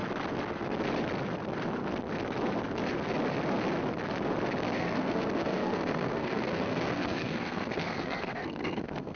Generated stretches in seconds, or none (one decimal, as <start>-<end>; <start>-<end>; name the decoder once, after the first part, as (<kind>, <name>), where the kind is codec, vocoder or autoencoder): 4.8-9.2 (codec, SNAC)